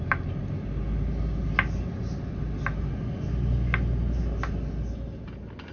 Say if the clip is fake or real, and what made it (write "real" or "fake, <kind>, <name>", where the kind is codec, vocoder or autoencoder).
real